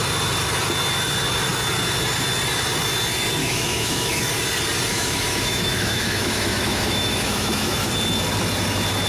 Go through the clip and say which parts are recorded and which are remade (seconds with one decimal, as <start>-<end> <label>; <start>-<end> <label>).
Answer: 0.0-3.4 recorded; 3.4-4.2 remade; 4.2-4.9 recorded; 4.9-7.9 remade; 7.9-9.1 recorded